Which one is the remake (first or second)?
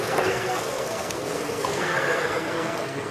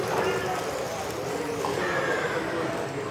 first